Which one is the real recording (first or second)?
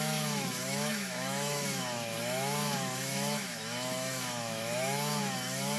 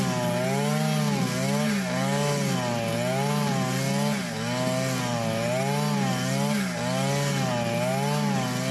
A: second